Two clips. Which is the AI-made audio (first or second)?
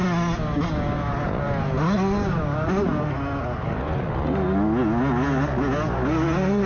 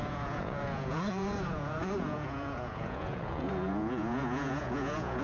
second